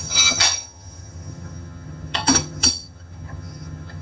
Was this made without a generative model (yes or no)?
no